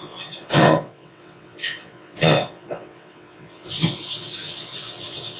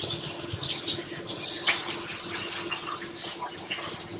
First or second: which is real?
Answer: second